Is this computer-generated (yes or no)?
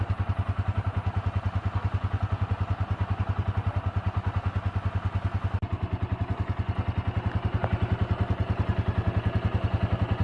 no